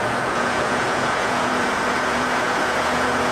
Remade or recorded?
remade